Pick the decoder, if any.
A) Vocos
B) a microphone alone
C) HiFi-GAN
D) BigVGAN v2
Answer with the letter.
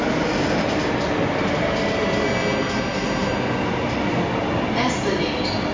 B